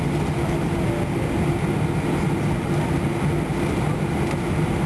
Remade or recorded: recorded